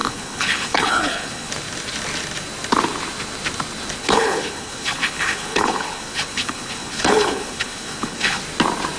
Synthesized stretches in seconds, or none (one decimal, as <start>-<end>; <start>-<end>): 0.0-1.5; 4.0-8.4